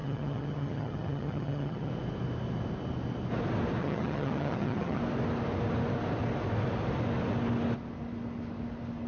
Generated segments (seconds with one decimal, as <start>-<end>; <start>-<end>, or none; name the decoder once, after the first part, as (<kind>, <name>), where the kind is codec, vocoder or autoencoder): 0.0-1.9 (vocoder, HiFi-GAN); 3.8-5.0